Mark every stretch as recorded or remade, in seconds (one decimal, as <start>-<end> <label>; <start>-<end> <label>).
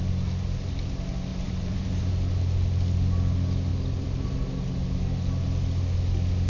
0.0-1.3 recorded; 1.3-2.1 remade; 2.1-3.7 recorded; 3.7-4.3 remade; 4.3-6.5 recorded